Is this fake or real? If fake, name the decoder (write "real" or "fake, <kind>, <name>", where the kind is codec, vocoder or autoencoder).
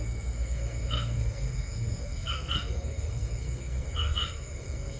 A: fake, codec, SNAC